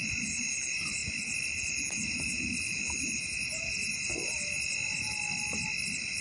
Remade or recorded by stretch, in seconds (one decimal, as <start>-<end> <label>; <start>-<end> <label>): 0.0-6.2 recorded